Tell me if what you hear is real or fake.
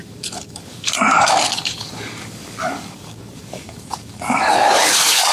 fake